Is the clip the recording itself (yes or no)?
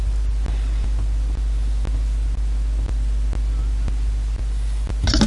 yes